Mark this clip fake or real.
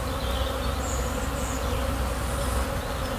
real